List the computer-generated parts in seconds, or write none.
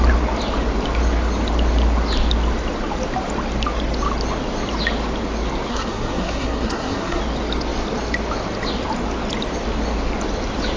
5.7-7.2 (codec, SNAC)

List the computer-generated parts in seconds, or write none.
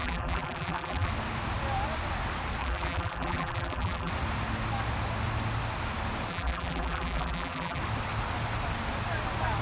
0.0-1.1 (vocoder, BigVGAN v2); 2.6-4.1; 6.3-7.8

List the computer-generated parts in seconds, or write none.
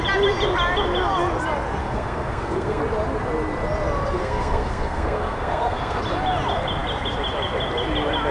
1.8-2.8 (codec, SNAC); 4.2-6.0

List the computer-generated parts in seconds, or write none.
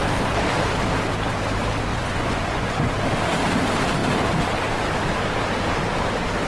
1.9-2.9 (vocoder, Vocos)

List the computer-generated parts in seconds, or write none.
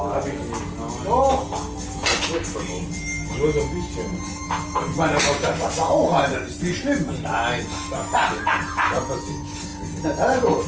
none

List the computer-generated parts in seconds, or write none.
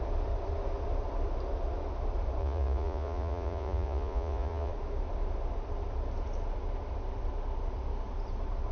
2.4-4.7 (vocoder, Vocos)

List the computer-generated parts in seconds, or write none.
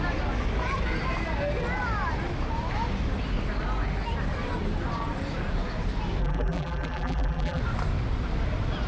6.2-7.6 (vocoder, BigVGAN v2)